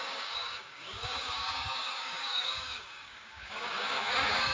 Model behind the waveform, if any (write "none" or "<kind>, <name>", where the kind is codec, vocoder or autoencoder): codec, DAC